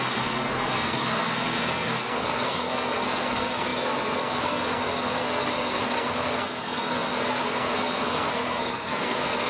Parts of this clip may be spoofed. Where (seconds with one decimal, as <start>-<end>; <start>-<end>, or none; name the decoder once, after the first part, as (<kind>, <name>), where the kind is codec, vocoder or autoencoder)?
0.0-9.5 (codec, SNAC)